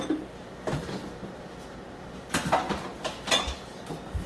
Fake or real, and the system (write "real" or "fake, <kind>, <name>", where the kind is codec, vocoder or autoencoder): real